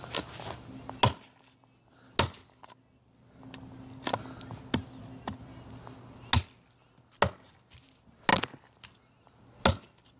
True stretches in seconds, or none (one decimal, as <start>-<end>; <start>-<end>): 0.0-10.2